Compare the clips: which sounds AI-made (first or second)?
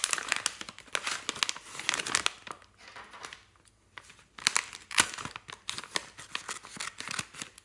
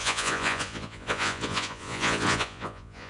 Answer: second